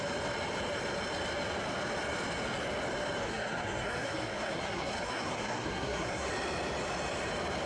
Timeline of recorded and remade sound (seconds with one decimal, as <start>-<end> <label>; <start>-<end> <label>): 0.0-3.2 recorded; 3.2-6.3 remade; 6.3-7.7 recorded